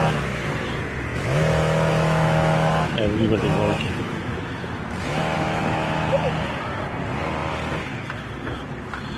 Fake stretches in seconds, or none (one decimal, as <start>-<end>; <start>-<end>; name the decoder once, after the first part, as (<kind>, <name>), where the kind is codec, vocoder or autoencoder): 1.1-6.3 (autoencoder, DAC-VAE)